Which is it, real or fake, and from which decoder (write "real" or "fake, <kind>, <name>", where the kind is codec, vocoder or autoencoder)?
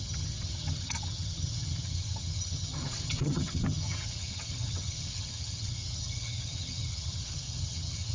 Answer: fake, vocoder, HiFi-GAN